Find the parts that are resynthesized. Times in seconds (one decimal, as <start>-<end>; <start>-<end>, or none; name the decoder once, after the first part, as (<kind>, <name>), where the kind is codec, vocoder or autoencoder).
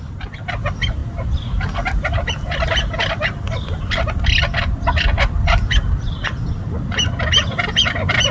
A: none